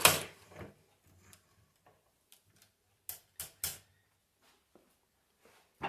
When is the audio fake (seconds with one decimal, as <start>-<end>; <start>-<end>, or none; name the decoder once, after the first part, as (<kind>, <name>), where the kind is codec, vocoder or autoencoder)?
none